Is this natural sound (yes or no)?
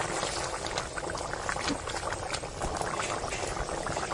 yes